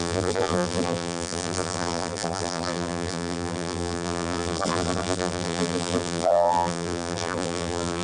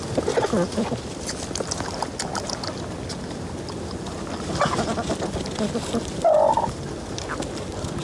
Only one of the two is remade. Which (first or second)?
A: first